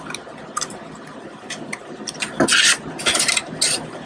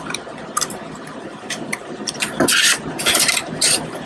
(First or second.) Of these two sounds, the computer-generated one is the second